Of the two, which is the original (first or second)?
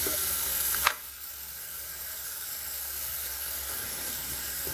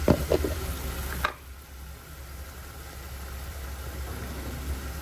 second